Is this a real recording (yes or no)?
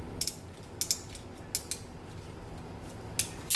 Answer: yes